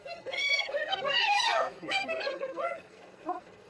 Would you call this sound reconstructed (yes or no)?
yes